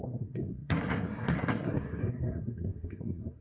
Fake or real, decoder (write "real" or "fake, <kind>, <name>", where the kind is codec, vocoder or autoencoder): fake, codec, SNAC